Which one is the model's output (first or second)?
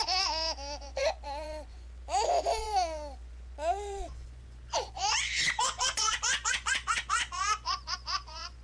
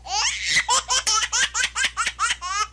first